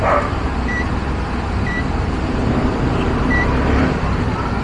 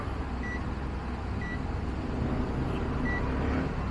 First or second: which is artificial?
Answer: first